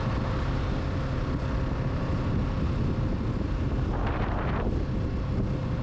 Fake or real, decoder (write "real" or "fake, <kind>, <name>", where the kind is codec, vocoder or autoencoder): real